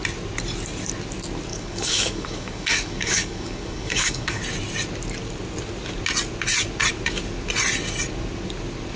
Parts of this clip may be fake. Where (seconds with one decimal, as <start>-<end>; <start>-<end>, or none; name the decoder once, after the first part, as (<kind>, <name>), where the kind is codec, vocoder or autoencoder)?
1.5-4.4 (codec, DAC)